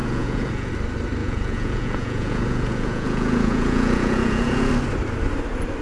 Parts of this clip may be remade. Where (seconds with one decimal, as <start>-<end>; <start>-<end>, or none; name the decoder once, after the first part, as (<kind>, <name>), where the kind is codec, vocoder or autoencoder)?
0.0-0.7 (vocoder, Vocos); 1.2-4.7